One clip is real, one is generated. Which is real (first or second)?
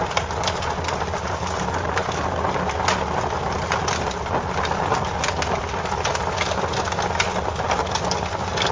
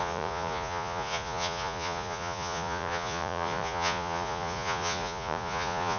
first